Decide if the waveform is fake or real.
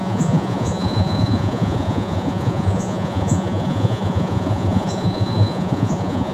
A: fake